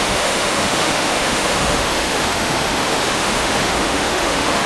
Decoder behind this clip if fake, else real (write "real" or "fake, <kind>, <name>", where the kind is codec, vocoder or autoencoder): fake, autoencoder, DAC-VAE